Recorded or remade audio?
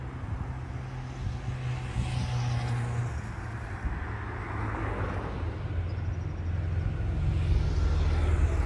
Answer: recorded